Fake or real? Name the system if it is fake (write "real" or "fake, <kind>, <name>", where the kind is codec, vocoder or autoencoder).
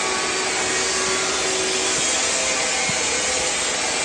real